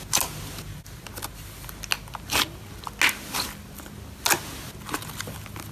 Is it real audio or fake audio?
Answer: real